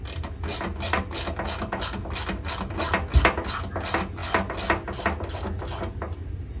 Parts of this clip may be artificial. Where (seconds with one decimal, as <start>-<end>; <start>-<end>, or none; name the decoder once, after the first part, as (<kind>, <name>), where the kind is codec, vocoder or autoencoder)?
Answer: none